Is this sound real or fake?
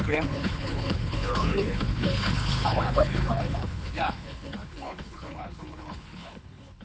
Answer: fake